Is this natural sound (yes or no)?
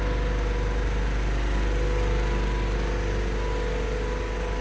yes